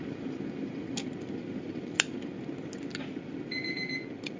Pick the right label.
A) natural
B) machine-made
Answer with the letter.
A